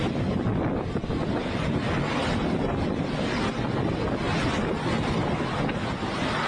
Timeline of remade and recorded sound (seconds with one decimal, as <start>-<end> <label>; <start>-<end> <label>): 0.0-6.5 recorded